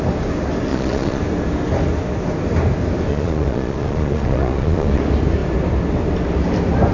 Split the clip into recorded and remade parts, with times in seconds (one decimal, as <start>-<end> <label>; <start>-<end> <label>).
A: 0.0-0.7 recorded; 0.7-1.2 remade; 1.2-3.1 recorded; 3.1-5.0 remade; 5.0-6.9 recorded